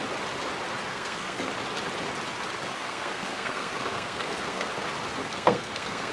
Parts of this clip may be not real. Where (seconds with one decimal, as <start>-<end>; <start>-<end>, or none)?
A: 0.9-1.5; 2.6-4.7; 5.2-6.1